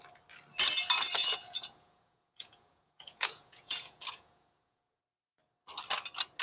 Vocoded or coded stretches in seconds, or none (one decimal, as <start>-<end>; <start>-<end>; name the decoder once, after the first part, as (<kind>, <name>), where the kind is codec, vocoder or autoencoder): 1.2-5.0 (vocoder, Vocos)